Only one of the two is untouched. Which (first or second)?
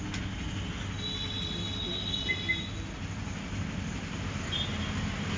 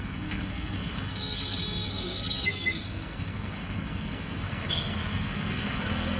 first